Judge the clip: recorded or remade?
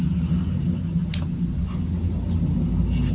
recorded